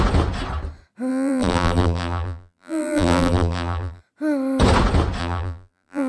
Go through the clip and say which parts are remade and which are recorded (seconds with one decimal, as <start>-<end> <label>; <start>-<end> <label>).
0.0-1.1 recorded; 1.1-4.0 remade; 4.0-5.2 recorded; 5.2-6.1 remade

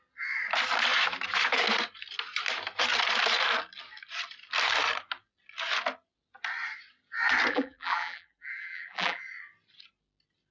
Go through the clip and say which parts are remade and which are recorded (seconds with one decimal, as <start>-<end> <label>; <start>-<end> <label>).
0.0-7.5 recorded; 7.5-9.2 remade; 9.2-10.5 recorded

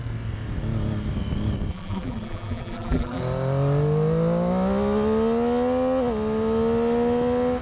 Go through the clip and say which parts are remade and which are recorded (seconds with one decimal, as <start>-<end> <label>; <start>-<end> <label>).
0.0-1.7 recorded; 1.7-3.2 remade; 3.2-7.6 recorded

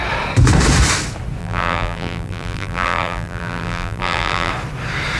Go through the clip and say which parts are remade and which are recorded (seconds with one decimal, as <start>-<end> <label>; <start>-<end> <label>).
0.0-1.4 recorded; 1.4-4.5 remade; 4.5-5.2 recorded